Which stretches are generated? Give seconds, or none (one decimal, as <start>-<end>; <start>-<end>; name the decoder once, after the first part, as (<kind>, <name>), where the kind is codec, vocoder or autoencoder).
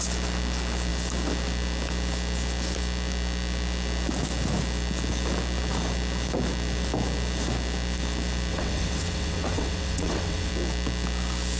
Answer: 8.5-10.5 (vocoder, WaveNeXt)